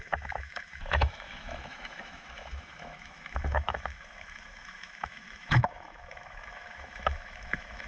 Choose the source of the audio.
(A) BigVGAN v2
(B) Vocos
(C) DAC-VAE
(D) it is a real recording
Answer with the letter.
C